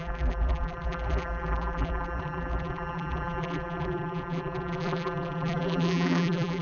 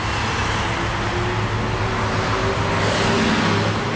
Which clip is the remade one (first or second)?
first